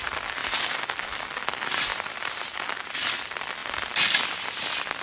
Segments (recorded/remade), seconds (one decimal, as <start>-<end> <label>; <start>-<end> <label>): 0.0-1.9 recorded; 1.9-2.6 remade; 2.6-5.0 recorded